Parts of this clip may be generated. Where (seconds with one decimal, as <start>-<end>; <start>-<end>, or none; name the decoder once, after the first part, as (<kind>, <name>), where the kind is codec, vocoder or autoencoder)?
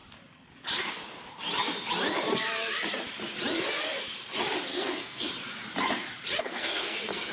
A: 4.7-5.3 (codec, SNAC); 6.4-7.3